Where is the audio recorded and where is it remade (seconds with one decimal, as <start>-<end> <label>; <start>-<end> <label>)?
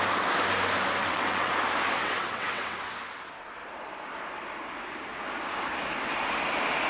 0.0-1.0 recorded; 1.0-1.5 remade; 1.5-2.0 recorded; 2.0-2.8 remade; 2.8-6.9 recorded